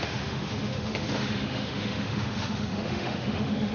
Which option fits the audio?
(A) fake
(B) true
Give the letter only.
A